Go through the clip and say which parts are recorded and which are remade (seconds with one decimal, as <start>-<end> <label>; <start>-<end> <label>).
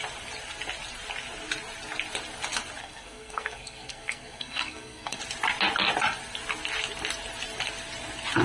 0.0-2.8 recorded; 2.8-5.2 remade; 5.2-8.4 recorded